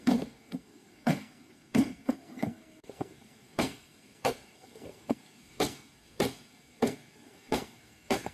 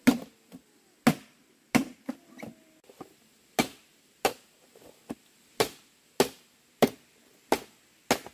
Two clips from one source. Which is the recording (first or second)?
second